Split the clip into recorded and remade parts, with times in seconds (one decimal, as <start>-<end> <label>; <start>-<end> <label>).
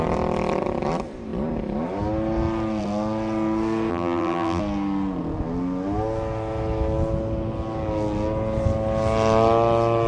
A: 0.0-3.9 recorded; 3.9-4.6 remade; 4.6-10.1 recorded